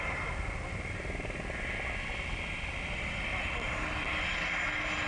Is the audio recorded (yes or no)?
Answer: yes